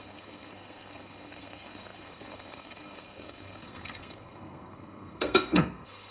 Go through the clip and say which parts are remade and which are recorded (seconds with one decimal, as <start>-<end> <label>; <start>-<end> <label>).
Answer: 0.0-6.1 remade